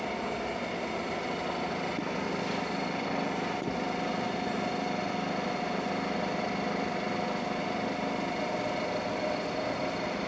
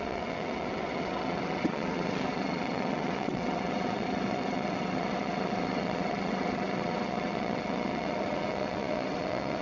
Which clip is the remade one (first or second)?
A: second